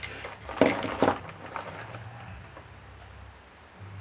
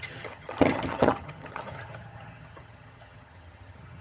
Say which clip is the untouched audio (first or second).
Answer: first